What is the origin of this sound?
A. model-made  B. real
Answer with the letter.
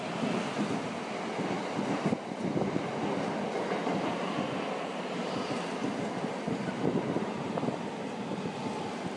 B